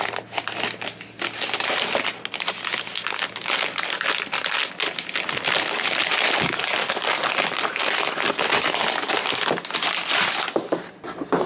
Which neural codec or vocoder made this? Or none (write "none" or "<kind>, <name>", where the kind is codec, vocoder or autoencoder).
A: none